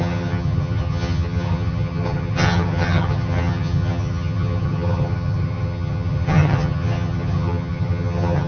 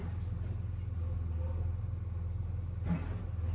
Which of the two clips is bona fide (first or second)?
second